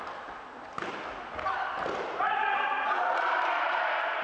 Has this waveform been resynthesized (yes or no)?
no